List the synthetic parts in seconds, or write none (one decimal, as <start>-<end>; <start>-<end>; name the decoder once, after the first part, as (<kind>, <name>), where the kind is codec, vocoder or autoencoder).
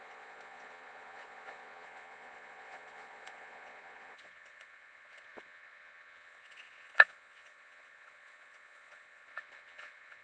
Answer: 0.0-10.2 (vocoder, Vocos)